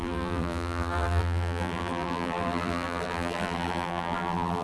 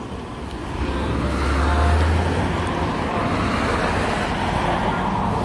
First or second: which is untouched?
second